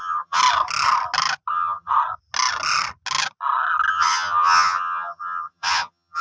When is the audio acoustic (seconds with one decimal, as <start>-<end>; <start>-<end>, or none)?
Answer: 0.4-1.5; 1.9-3.9